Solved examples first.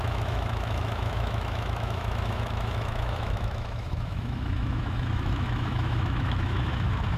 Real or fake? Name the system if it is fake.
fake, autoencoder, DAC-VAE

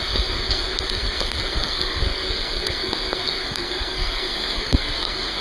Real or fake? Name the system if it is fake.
fake, codec, SNAC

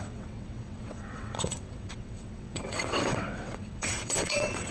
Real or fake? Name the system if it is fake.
fake, vocoder, WaveNeXt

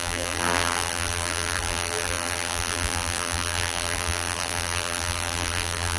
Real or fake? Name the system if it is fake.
fake, vocoder, BigVGAN v2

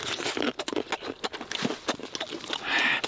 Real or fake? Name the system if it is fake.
real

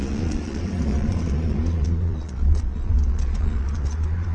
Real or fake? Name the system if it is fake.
fake, vocoder, Vocos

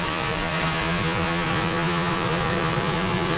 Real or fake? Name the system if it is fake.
fake, vocoder, Vocos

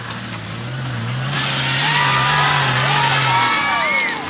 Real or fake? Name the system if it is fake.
real